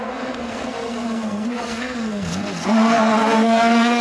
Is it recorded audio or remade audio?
remade